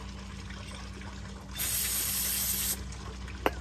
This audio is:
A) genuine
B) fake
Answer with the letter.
A